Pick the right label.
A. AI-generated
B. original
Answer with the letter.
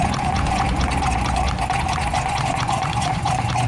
A